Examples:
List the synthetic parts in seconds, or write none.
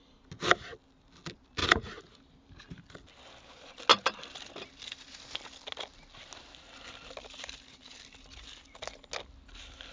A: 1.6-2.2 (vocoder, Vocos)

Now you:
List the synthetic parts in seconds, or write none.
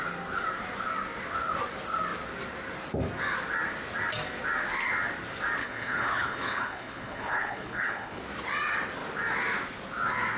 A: 5.6-8.2 (codec, HILCodec)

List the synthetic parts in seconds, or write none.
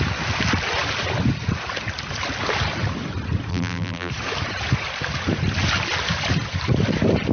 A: 3.5-4.1 (vocoder, BigVGAN v2)